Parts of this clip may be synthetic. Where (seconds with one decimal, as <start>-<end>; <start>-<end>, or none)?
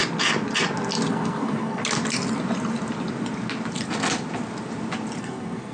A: 1.1-1.8; 5.2-5.7